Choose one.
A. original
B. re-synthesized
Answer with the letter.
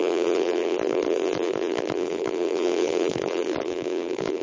B